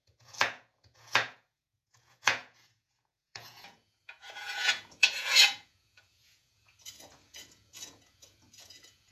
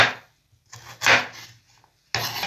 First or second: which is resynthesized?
first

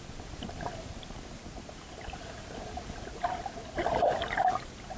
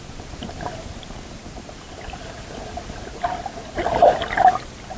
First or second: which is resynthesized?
first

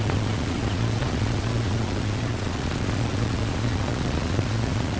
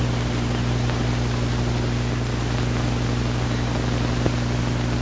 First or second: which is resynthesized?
first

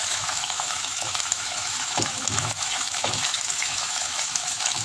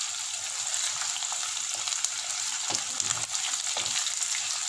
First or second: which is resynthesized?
first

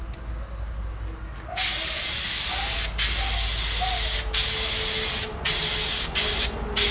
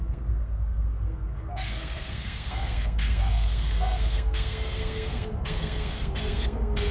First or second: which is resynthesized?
second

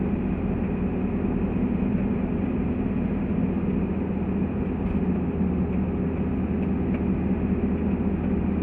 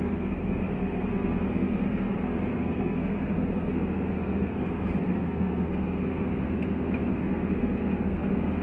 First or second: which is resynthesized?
second